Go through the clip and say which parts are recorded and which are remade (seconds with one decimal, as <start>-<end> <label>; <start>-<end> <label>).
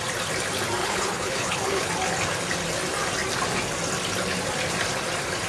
0.0-0.8 recorded; 0.8-1.9 remade; 1.9-5.5 recorded